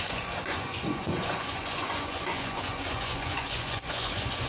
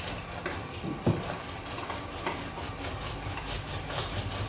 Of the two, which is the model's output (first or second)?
first